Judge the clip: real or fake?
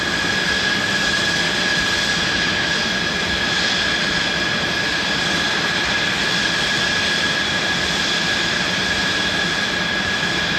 real